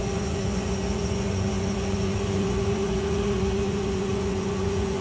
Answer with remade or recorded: remade